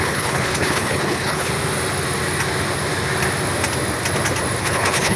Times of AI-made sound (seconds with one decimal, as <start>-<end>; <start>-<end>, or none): 0.0-1.5; 4.6-5.2